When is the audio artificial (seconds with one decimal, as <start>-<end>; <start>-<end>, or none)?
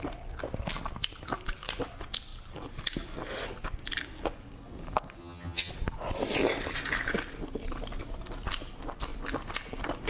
5.2-5.7